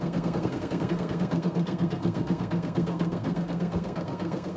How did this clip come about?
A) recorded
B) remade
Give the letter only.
B